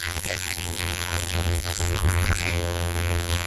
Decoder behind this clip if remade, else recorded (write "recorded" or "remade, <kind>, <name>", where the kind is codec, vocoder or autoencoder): remade, vocoder, BigVGAN v2